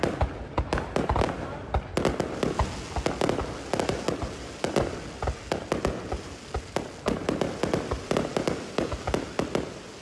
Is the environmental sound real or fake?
real